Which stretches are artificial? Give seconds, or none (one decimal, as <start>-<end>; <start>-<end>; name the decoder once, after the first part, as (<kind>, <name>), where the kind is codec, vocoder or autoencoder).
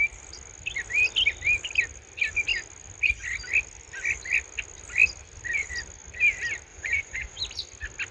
6.7-7.4 (vocoder, Vocos)